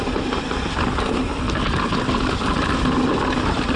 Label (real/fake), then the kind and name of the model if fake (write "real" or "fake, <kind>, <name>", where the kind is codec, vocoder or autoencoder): real